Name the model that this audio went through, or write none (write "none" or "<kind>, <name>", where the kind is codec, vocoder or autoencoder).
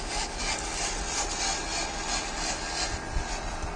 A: none